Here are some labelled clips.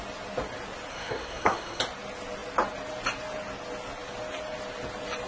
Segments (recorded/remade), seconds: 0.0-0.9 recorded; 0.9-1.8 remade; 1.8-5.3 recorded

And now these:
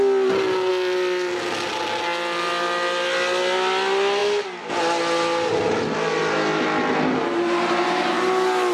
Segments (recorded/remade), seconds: 0.0-8.7 recorded